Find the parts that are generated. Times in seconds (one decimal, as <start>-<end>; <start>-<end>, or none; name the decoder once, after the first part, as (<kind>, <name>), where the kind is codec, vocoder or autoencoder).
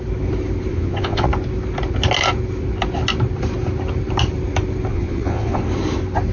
0.7-1.3 (vocoder, Vocos); 4.9-5.6